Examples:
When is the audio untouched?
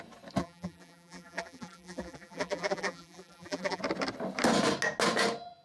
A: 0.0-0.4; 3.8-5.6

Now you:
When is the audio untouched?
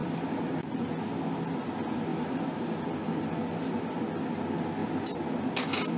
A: 1.2-2.1; 4.0-4.8; 5.4-6.0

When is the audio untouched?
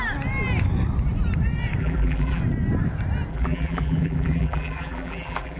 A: 0.0-1.8; 2.4-3.3